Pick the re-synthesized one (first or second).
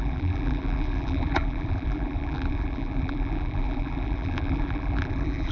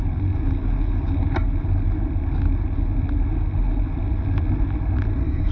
first